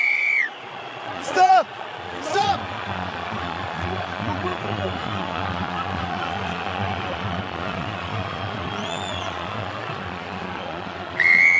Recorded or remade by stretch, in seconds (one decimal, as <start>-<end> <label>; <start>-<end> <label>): 0.0-11.6 remade